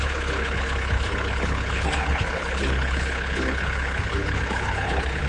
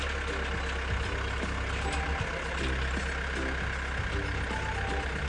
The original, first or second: second